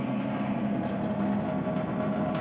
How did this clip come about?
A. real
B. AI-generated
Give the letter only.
A